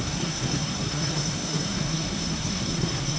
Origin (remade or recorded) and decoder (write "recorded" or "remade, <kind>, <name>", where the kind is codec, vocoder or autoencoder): remade, codec, SNAC